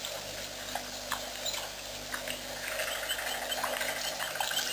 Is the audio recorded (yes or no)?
yes